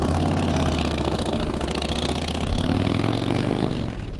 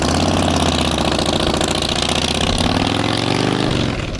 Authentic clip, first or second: second